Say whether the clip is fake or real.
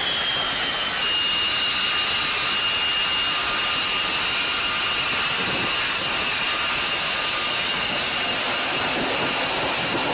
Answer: real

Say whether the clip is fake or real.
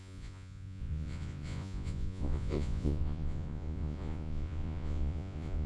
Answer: fake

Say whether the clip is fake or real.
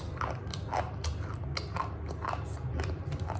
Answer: real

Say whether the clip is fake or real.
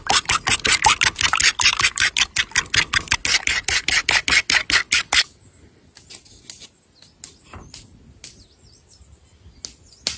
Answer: real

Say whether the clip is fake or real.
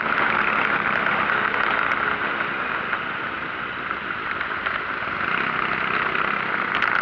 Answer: real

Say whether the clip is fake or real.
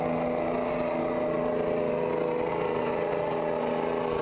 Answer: real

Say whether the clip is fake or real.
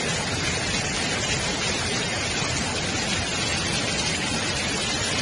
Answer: real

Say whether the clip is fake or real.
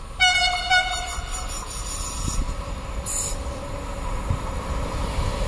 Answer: real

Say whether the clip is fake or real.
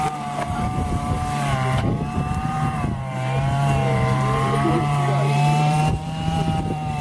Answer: fake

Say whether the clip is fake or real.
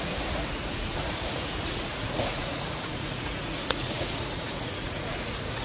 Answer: fake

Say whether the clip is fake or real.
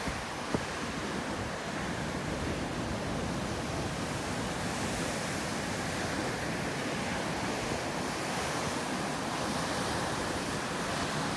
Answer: real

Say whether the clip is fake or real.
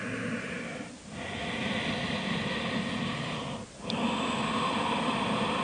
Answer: real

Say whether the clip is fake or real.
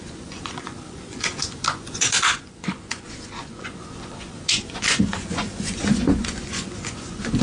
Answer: fake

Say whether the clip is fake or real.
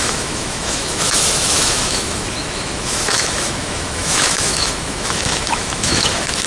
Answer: fake